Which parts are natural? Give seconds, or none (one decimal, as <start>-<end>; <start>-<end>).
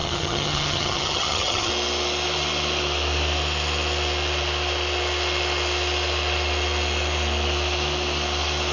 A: 1.7-8.7